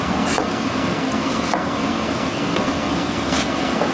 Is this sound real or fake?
fake